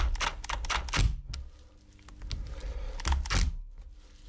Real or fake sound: real